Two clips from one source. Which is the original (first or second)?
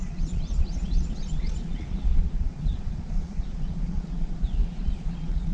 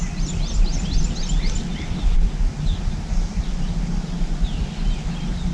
second